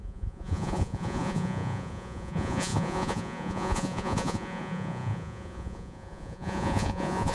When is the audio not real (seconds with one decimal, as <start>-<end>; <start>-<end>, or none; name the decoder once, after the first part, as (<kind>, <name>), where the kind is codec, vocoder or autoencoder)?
0.0-7.3 (vocoder, Vocos)